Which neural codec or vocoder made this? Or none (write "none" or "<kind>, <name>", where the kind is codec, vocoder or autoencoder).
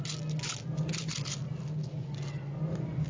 none